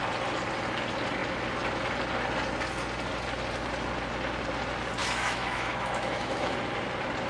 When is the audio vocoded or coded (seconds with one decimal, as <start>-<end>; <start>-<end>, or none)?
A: 5.0-6.6